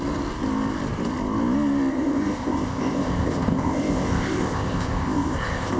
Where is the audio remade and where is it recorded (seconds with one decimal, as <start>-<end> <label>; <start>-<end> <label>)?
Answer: 0.0-1.9 recorded; 1.9-5.8 remade